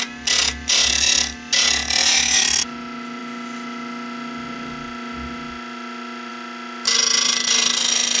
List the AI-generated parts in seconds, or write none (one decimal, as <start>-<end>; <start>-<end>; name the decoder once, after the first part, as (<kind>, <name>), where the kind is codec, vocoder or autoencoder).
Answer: none